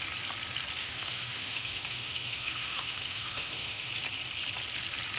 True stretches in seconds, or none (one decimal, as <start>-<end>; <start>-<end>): 0.0-0.8; 3.9-5.2